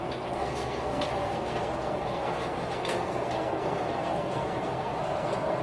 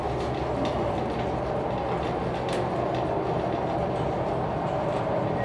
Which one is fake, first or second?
first